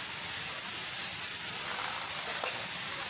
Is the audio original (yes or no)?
yes